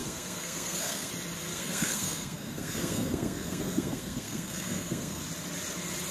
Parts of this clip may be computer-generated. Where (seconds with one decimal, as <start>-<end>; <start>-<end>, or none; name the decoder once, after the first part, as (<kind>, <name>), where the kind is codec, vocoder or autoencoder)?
0.0-1.1 (codec, SNAC); 1.5-5.2